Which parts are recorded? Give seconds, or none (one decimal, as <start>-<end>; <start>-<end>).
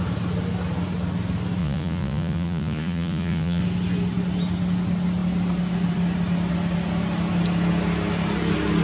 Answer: 0.0-1.6; 3.6-8.8